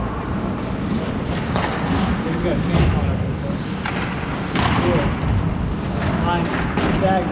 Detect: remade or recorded recorded